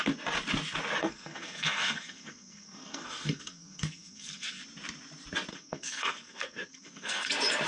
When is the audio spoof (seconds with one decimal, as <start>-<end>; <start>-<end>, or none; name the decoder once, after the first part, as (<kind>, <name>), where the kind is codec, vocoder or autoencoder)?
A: 1.0-4.6 (codec, SNAC); 5.5-7.3